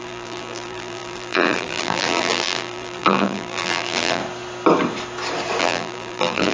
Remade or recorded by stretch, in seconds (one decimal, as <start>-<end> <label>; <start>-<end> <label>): 0.0-4.2 remade; 4.2-5.6 recorded; 5.6-6.5 remade